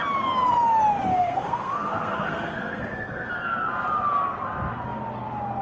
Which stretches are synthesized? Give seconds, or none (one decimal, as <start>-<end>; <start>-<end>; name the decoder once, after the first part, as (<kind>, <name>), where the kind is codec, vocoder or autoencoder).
1.1-3.3 (codec, SNAC)